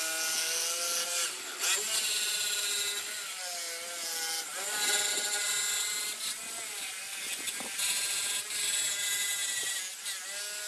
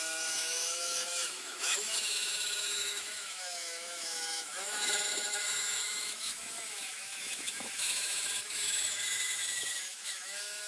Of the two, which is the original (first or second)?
first